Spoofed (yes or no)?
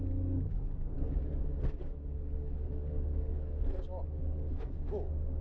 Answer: yes